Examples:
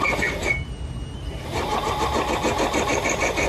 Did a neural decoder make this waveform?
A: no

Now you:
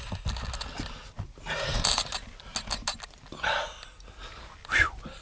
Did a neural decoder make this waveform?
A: no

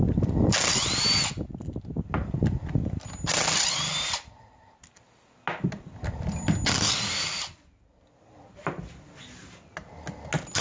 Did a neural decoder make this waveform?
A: no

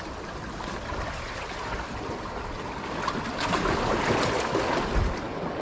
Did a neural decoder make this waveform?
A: no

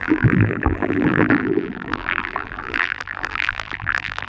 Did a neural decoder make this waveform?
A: yes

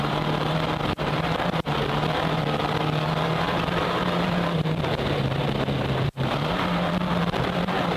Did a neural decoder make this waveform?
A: yes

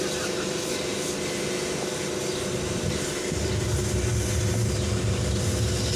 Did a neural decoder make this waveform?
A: no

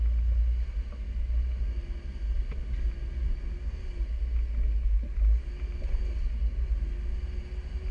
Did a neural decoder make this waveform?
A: no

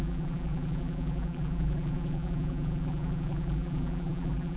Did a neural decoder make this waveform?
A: yes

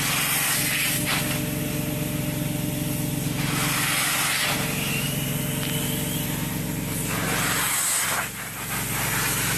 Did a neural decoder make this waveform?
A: no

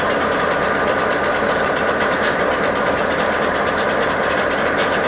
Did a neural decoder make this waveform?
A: yes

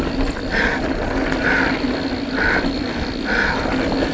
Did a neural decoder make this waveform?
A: no